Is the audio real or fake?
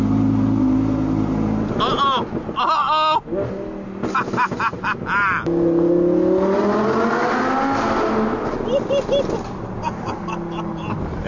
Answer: real